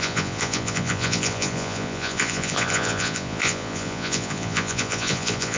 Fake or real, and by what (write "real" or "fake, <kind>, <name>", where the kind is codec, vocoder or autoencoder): fake, vocoder, Vocos